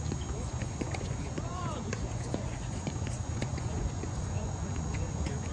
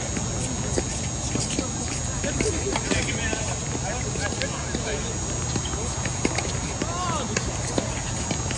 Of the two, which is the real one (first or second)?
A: second